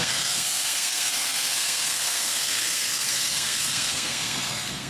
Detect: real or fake fake